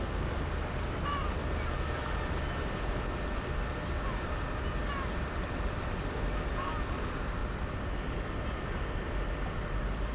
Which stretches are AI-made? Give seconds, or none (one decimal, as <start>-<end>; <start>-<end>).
none